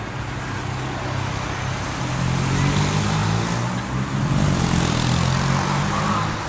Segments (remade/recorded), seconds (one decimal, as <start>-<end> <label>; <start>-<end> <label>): 0.0-6.5 recorded

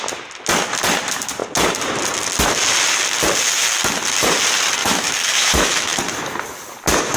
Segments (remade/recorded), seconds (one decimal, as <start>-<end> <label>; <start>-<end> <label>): 0.0-4.8 recorded; 4.8-6.0 remade; 6.0-7.2 recorded

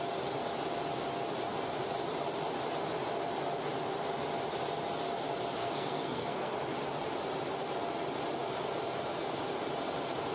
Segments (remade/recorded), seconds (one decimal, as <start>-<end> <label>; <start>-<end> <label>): 0.0-5.6 recorded; 5.6-6.5 remade; 6.5-10.3 recorded

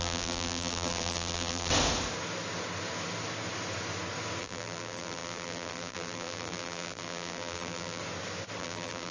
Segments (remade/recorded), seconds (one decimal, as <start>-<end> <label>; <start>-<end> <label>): 0.0-1.7 remade; 1.7-4.4 recorded; 4.4-8.0 remade; 8.0-8.6 recorded; 8.6-9.1 remade

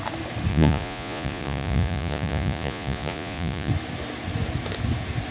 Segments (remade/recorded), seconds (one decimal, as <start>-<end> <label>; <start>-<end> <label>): 0.0-0.5 recorded; 0.5-3.7 remade; 3.7-5.3 recorded

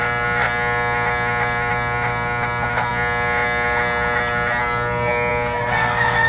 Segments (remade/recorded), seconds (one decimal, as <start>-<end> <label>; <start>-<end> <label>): 0.0-6.3 recorded